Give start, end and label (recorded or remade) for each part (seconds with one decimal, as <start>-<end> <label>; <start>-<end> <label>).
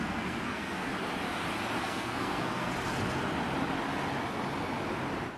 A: 0.0-0.9 remade; 0.9-1.8 recorded; 1.8-2.7 remade; 2.7-5.4 recorded